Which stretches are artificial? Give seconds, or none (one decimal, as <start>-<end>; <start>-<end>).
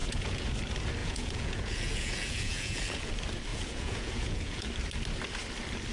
0.0-0.5; 1.0-3.1; 3.5-4.7